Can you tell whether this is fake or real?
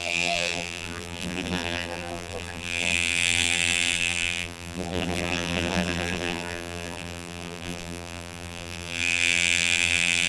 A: fake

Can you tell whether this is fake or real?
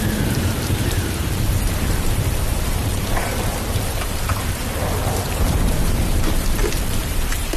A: fake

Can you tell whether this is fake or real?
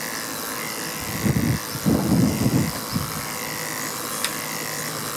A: fake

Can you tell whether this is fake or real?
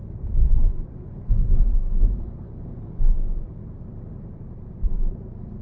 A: fake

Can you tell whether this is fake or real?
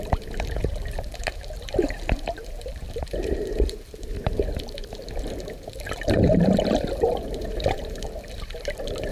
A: fake